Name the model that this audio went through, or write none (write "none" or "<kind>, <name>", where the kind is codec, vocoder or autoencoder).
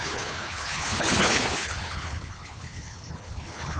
codec, HILCodec